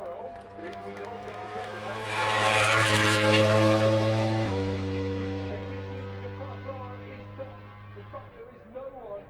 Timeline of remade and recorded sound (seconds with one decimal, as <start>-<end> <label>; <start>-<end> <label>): 0.0-0.6 recorded; 0.6-5.5 remade; 5.5-9.3 recorded